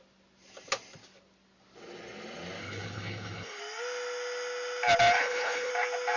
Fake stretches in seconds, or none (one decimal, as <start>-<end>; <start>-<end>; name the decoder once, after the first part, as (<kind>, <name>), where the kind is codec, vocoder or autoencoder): 2.6-3.6 (codec, HILCodec); 5.2-5.7